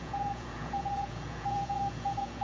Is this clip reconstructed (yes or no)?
yes